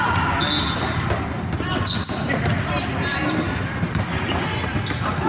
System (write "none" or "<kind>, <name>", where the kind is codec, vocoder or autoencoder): none